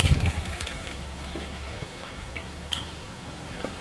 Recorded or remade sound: remade